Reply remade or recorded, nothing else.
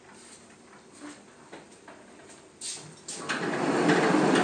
recorded